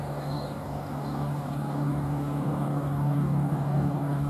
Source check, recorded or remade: remade